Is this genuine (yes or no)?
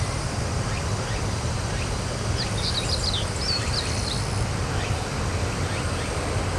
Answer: yes